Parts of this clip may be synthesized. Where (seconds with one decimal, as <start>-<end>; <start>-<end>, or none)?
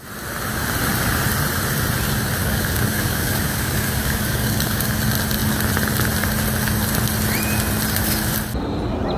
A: 2.4-5.0